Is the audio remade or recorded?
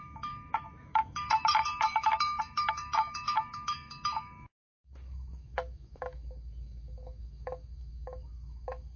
remade